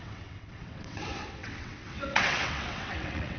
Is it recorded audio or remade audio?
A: remade